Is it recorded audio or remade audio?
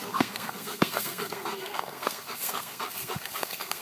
remade